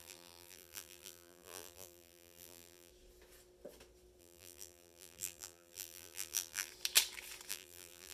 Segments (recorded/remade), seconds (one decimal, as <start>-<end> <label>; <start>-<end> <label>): 0.0-2.9 remade; 2.9-4.2 recorded; 4.2-6.7 remade; 6.7-7.5 recorded; 7.5-8.1 remade